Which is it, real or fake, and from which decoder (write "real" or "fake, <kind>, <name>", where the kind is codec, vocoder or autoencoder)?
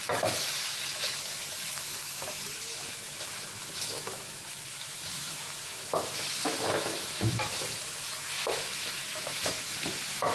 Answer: fake, autoencoder, DAC-VAE